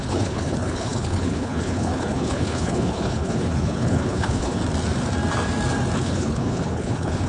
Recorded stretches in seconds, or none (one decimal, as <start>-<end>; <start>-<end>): 4.6-6.0